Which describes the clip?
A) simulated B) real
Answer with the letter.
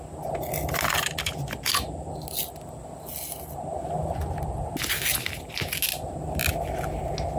B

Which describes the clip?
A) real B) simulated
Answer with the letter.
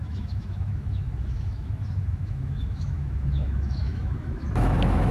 B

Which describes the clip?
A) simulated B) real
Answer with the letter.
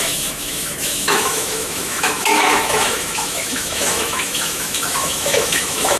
A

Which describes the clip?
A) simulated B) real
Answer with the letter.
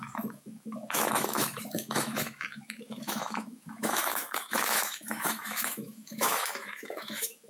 A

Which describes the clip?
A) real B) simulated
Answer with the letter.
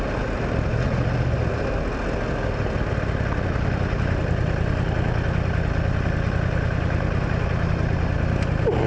A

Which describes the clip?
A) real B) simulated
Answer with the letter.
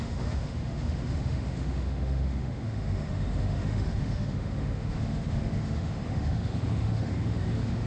B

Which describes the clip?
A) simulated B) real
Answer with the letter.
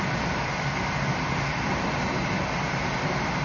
B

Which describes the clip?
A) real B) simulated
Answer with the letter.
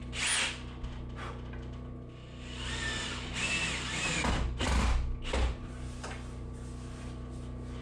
A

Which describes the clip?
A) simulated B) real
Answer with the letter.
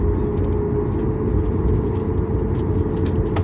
B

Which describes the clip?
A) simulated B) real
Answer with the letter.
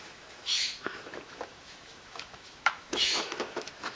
A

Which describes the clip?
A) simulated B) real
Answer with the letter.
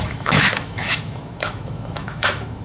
A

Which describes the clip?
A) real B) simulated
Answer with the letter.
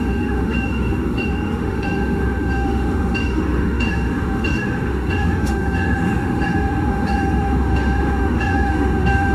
B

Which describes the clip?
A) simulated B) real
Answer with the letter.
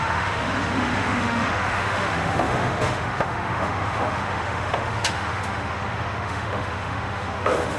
A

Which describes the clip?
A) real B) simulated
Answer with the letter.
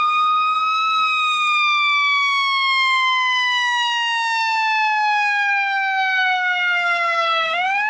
B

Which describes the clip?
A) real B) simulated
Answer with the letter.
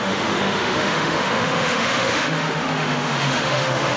B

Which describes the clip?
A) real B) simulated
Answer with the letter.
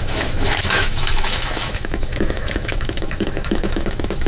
B